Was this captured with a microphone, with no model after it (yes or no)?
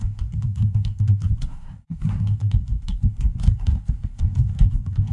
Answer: no